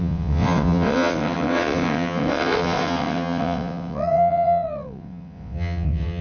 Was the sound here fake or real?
fake